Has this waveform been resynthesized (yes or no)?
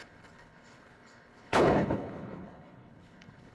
yes